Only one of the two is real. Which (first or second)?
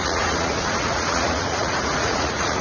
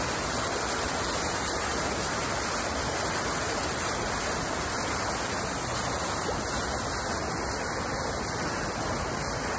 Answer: second